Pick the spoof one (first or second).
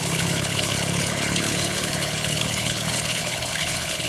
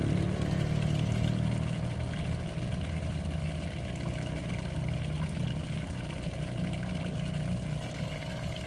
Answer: first